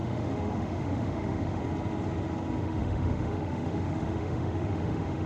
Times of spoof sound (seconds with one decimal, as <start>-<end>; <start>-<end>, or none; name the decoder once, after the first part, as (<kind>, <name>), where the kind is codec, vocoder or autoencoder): 0.0-1.6 (autoencoder, DAC-VAE); 2.6-5.3